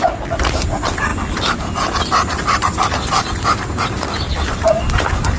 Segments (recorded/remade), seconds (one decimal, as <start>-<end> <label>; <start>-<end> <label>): 0.0-5.4 recorded